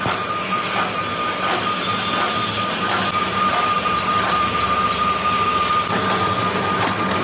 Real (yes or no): yes